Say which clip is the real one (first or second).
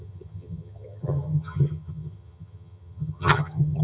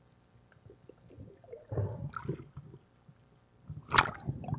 second